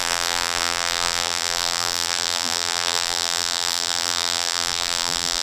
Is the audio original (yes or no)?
no